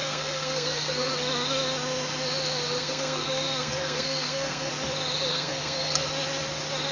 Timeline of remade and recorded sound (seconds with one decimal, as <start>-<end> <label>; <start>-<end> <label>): 0.0-1.1 remade; 1.1-2.8 recorded; 2.8-4.7 remade; 4.7-5.3 recorded; 5.3-6.1 remade; 6.1-6.9 recorded